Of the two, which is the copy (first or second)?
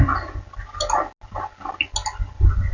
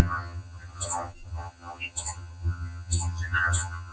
second